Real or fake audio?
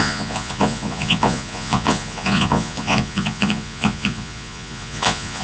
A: fake